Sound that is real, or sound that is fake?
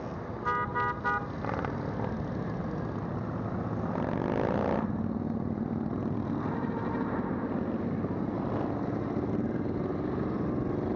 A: real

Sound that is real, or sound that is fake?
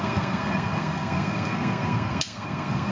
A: fake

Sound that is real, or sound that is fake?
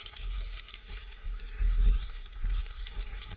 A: fake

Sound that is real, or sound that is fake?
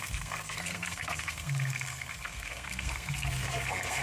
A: fake